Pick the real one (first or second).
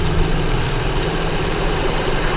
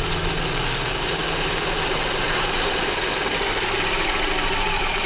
second